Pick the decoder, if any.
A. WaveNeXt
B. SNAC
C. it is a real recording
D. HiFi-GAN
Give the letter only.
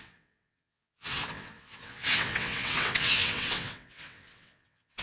A